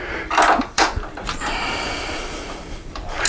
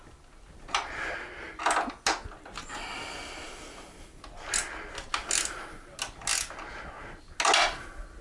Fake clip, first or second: first